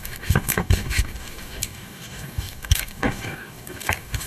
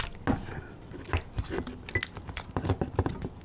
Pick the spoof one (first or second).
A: first